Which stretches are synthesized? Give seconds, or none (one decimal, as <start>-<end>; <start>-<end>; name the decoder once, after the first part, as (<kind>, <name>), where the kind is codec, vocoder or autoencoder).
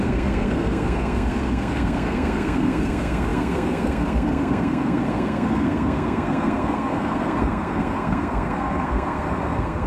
0.0-9.9 (codec, SNAC)